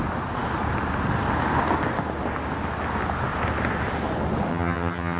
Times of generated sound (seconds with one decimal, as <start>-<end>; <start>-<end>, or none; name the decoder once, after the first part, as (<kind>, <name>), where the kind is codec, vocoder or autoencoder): 4.5-5.2 (vocoder, HiFi-GAN)